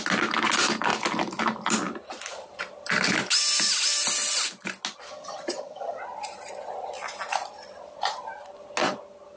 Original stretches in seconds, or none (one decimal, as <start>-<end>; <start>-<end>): 0.0-5.1; 6.0-9.4